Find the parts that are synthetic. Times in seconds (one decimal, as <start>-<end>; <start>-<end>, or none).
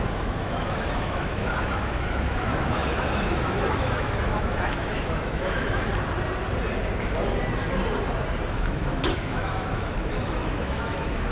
0.0-5.9; 8.5-11.3